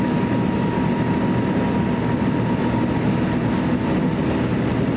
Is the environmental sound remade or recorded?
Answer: recorded